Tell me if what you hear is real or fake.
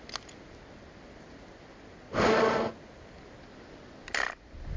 real